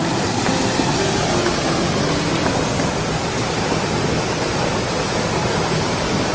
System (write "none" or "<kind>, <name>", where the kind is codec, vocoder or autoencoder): none